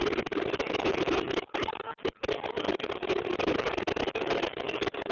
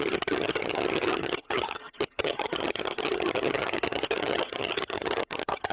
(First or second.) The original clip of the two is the first